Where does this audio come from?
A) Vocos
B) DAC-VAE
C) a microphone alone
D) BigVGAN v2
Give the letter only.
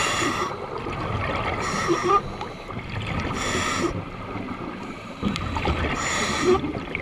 C